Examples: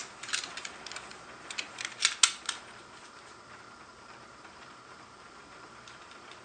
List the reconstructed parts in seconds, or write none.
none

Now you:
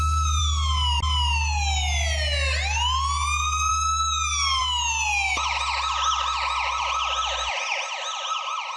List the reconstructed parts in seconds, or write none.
none